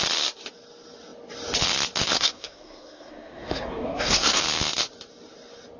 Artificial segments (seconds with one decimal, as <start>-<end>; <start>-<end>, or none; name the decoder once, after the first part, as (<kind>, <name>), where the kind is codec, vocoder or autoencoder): 2.1-4.4 (codec, SNAC)